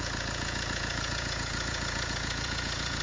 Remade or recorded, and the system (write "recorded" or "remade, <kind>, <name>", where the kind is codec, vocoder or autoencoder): remade, vocoder, Vocos